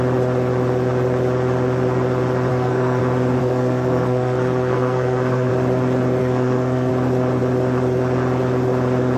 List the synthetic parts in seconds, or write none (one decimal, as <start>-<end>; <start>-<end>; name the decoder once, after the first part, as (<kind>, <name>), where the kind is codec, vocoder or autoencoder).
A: 2.5-3.0 (codec, SNAC); 3.4-5.5; 6.2-6.9